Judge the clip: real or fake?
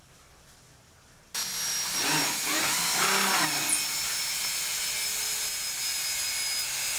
real